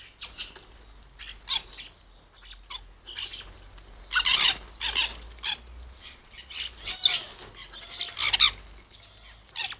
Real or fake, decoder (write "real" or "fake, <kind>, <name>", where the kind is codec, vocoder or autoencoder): real